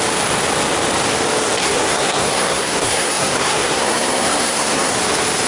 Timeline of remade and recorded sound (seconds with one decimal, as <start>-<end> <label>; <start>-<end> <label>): 0.0-1.6 recorded; 1.6-4.9 remade; 4.9-5.5 recorded